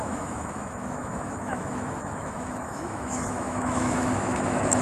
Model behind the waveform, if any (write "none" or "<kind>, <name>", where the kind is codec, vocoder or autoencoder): autoencoder, DAC-VAE